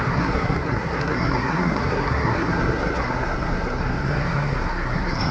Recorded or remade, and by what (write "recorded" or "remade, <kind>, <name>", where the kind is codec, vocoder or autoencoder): remade, codec, SNAC